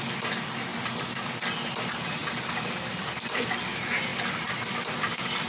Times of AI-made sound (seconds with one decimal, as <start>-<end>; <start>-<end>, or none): none